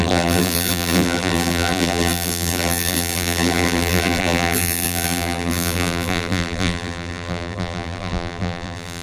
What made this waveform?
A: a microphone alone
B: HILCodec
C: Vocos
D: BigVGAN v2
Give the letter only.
D